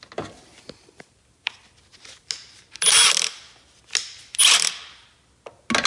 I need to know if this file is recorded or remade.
recorded